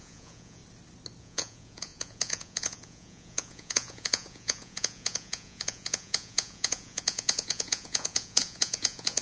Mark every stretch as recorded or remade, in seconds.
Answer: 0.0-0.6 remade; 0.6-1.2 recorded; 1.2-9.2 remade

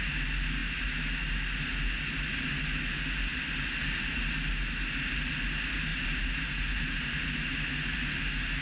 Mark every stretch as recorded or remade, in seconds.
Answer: 0.0-5.9 recorded; 5.9-8.1 remade; 8.1-8.6 recorded

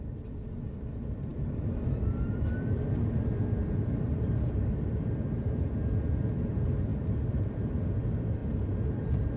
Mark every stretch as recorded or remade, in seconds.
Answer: 0.0-9.4 recorded

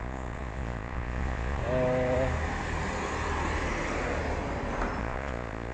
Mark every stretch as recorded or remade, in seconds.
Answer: 0.0-1.6 remade; 1.6-5.0 recorded; 5.0-5.7 remade

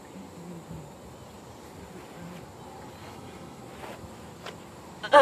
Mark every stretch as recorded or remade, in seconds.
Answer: 0.0-3.0 recorded; 3.0-3.6 remade; 3.6-5.2 recorded